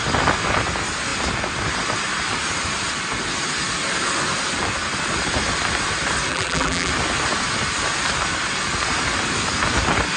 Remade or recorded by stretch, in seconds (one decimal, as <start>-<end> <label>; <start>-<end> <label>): 0.0-6.3 recorded; 6.3-6.9 remade; 6.9-10.2 recorded